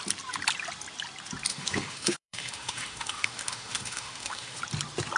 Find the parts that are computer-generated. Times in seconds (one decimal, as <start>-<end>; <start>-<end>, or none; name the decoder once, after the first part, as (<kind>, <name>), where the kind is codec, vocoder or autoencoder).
1.5-4.6 (autoencoder, DAC-VAE)